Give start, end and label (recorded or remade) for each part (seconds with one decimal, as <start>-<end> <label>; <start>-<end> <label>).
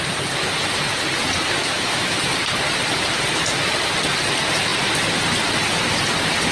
0.0-1.6 recorded; 1.6-2.2 remade; 2.2-6.5 recorded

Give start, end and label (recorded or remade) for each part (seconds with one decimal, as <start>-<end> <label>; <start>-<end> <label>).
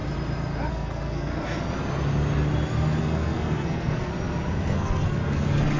0.0-0.7 recorded; 0.7-1.3 remade; 1.3-3.0 recorded; 3.0-4.1 remade; 4.1-4.7 recorded; 4.7-5.8 remade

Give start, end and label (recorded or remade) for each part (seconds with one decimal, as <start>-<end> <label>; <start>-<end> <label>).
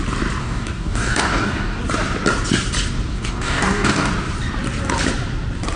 0.0-0.4 recorded; 0.4-1.8 remade; 1.8-3.1 recorded; 3.1-4.1 remade; 4.1-5.8 recorded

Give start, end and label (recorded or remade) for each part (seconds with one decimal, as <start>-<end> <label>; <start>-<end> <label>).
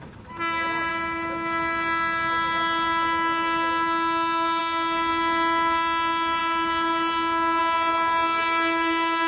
0.0-9.3 recorded